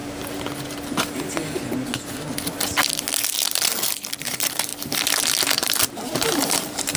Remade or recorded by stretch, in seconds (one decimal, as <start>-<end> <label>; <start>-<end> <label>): 0.0-4.2 recorded; 4.2-4.7 remade; 4.7-5.4 recorded; 5.4-7.0 remade